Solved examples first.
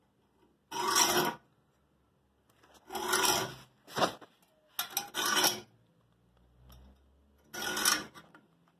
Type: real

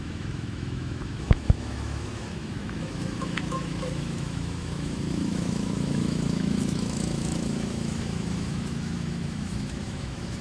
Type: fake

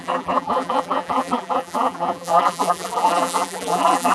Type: fake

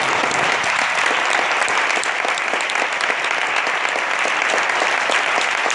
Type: fake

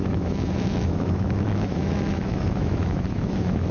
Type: fake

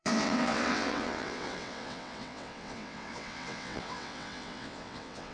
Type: fake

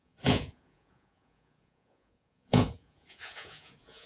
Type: fake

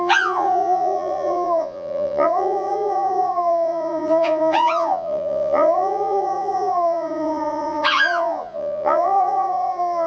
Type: fake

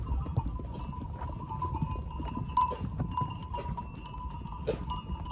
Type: real